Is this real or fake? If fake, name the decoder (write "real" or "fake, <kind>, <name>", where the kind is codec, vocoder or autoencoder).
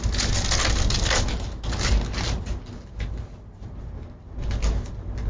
real